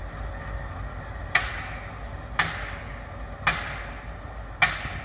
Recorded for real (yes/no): yes